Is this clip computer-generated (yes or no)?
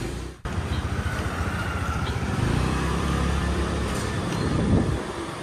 yes